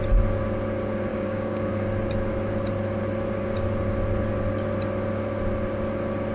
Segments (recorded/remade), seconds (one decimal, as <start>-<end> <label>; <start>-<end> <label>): 0.0-1.1 recorded; 1.1-1.7 remade; 1.7-6.3 recorded